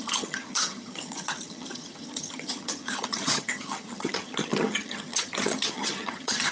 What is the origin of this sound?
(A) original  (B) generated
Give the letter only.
B